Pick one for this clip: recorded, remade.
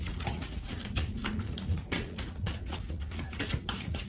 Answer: remade